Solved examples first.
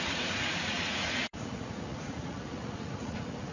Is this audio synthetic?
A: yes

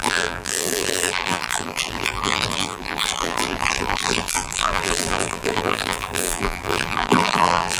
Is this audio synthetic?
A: yes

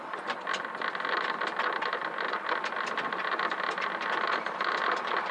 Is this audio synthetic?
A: no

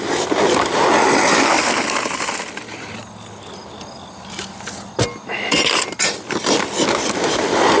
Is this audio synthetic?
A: no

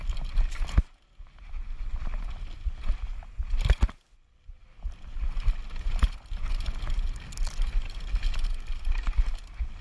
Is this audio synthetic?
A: no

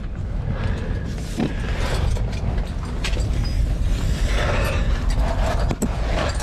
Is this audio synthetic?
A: no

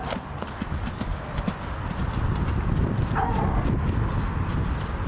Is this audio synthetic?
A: no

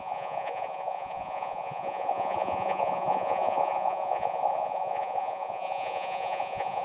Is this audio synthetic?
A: yes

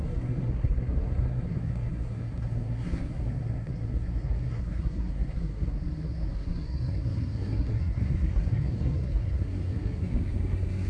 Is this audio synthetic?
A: yes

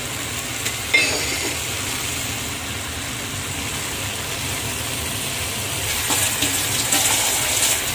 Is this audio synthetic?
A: no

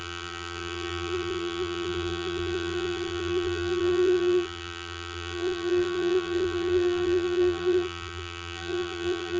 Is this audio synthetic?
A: yes